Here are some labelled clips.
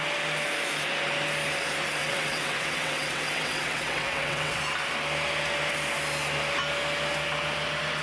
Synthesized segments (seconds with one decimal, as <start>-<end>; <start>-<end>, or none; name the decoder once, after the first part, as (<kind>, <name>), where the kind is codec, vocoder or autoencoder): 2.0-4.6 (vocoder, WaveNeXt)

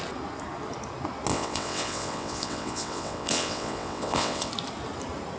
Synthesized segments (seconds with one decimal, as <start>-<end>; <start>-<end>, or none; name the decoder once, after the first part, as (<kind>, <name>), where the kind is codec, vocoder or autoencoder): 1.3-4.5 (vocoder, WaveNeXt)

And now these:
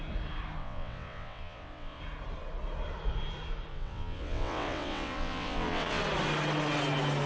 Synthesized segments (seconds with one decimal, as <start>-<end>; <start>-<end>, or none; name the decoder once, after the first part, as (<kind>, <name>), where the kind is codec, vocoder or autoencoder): 0.6-2.0 (vocoder, WaveNeXt); 3.7-6.0